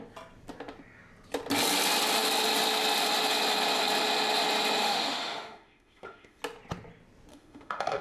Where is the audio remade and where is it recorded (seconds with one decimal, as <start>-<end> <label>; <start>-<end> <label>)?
0.0-4.8 recorded; 4.8-6.4 remade; 6.4-7.3 recorded; 7.3-8.0 remade

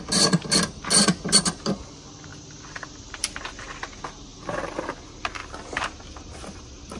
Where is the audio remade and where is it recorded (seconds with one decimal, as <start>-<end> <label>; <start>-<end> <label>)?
0.0-2.3 recorded; 2.3-3.3 remade; 3.3-4.3 recorded; 4.3-4.8 remade; 4.8-7.0 recorded

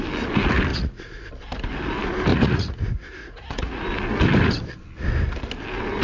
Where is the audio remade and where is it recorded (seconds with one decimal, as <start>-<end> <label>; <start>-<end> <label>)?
0.0-0.7 recorded; 0.7-1.3 remade; 1.3-2.3 recorded; 2.3-2.8 remade; 2.8-3.2 recorded; 3.2-3.8 remade; 3.8-6.0 recorded

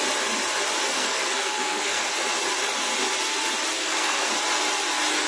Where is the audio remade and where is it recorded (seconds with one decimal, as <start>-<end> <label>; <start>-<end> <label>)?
0.0-0.9 recorded; 0.9-2.1 remade; 2.1-3.8 recorded; 3.8-4.3 remade; 4.3-5.3 recorded

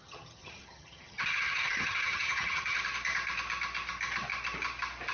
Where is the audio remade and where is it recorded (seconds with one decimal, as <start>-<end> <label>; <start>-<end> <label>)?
0.0-2.8 remade; 2.8-5.1 recorded

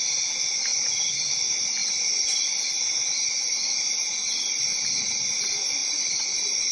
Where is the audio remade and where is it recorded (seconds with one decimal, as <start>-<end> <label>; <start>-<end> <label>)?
0.0-0.7 recorded; 0.7-1.3 remade; 1.3-1.8 recorded; 1.8-2.6 remade; 2.6-5.8 recorded; 5.8-6.7 remade